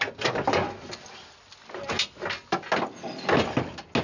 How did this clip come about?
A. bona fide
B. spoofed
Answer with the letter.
A